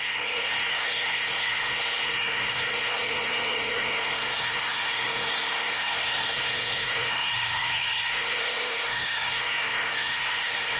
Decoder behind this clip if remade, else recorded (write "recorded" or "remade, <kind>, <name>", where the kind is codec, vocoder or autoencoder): remade, codec, SNAC